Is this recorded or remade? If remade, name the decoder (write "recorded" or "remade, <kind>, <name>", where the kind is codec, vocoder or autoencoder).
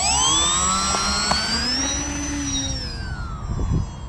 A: recorded